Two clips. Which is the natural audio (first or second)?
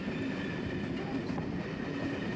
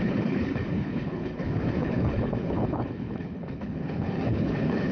first